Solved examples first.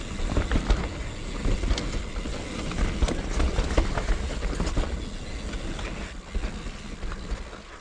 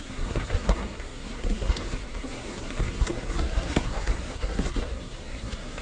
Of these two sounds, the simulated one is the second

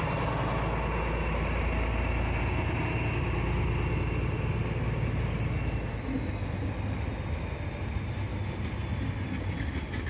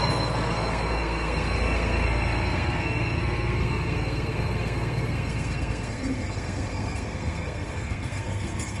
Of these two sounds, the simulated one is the second